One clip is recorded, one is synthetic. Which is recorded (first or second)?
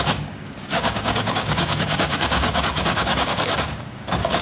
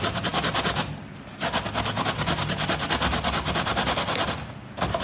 second